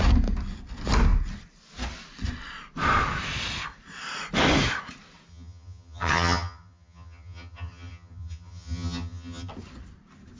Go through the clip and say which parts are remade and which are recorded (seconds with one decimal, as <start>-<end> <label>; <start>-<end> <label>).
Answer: 0.0-5.3 recorded; 5.3-9.5 remade; 9.5-10.4 recorded